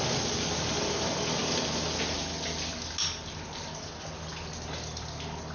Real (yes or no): yes